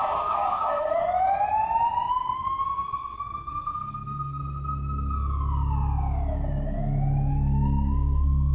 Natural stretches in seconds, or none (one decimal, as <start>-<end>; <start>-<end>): 1.0-2.1; 4.4-7.3